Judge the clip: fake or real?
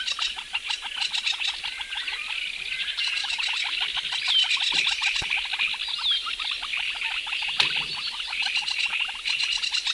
real